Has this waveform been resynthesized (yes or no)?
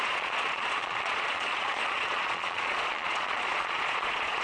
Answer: yes